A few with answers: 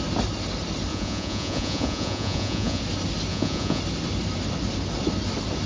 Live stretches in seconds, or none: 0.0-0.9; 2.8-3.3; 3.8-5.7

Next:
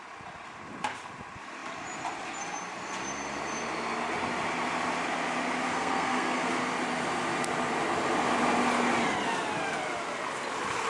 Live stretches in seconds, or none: 0.0-5.7; 6.5-10.9

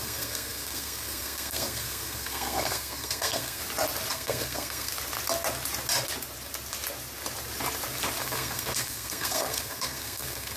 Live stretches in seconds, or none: 3.6-4.1; 4.9-8.2

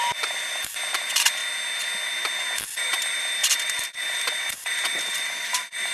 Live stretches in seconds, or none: 1.4-3.0

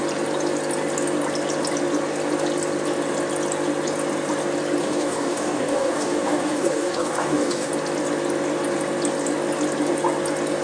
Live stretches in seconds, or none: 0.0-4.8; 7.7-10.6